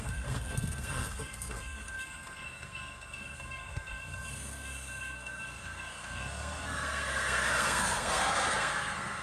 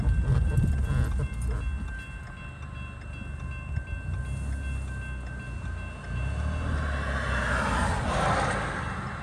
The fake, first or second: first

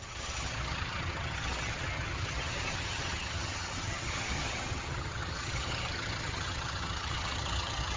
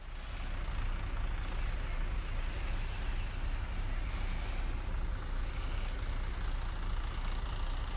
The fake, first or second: first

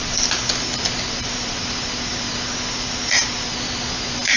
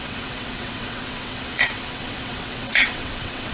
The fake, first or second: second